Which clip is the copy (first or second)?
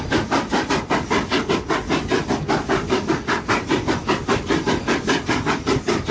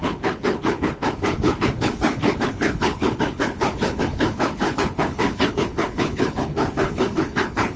second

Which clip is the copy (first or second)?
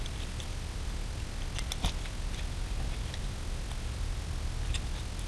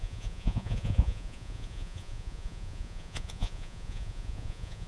second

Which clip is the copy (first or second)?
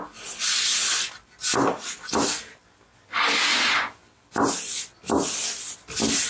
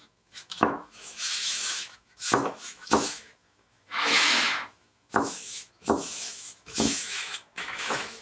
second